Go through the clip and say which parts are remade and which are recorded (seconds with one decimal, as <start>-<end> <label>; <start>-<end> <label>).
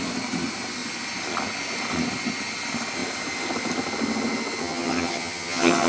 0.0-4.6 recorded; 4.6-5.9 remade